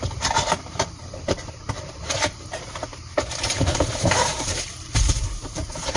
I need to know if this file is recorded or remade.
remade